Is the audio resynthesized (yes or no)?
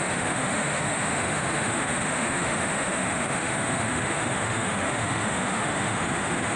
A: yes